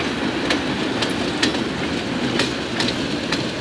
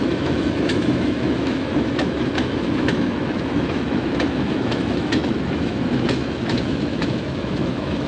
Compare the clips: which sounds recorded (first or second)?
first